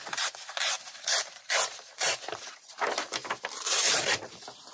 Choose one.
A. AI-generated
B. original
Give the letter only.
A